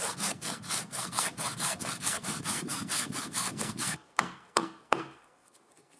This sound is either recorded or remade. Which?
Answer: remade